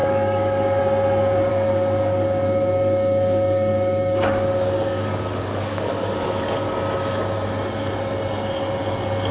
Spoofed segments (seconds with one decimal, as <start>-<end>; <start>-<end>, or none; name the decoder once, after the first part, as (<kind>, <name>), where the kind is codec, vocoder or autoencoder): 0.0-0.8 (codec, DAC); 1.5-6.7